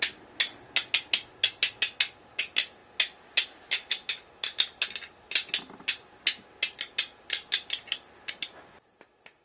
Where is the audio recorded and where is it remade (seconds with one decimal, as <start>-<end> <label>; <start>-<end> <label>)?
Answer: 0.0-9.4 recorded